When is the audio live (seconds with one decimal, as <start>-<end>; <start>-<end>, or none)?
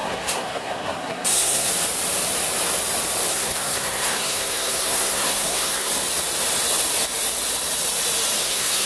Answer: 1.7-3.3; 5.9-8.4